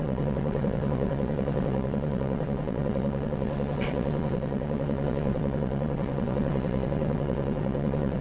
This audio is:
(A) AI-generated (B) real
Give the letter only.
A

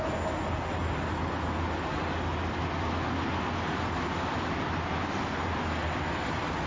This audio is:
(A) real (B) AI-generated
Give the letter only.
A